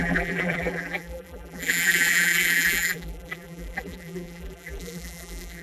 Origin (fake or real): fake